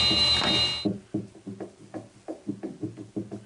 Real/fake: real